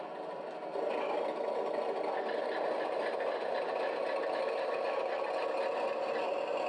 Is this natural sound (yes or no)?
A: yes